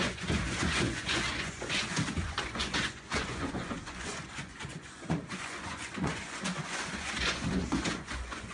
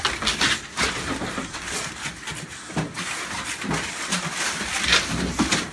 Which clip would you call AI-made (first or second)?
first